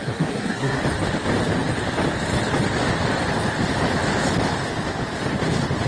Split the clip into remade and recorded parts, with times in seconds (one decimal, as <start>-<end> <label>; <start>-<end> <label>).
0.0-0.8 remade; 0.8-5.9 recorded